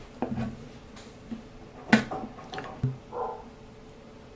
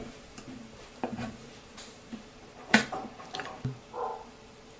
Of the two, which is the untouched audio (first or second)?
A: first